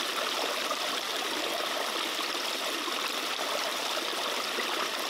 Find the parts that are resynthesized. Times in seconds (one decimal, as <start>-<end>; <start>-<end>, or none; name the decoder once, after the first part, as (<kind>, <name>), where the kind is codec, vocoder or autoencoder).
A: 0.7-3.8 (vocoder, BigVGAN v2)